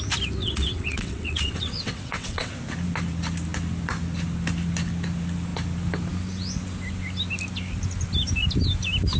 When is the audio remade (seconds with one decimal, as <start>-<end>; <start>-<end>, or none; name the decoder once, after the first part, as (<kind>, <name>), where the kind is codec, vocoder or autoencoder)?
0.4-2.5 (vocoder, WaveNeXt)